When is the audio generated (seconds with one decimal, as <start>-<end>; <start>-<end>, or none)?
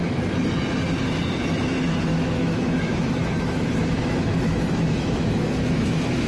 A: 2.1-6.3